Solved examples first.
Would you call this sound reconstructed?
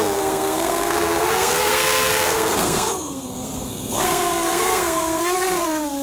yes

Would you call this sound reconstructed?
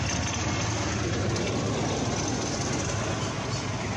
no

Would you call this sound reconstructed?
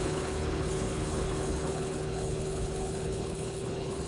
yes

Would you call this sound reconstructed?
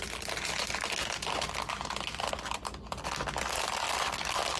no